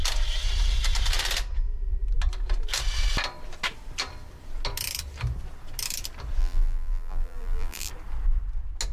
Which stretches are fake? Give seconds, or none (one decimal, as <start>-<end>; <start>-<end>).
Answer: 6.4-7.9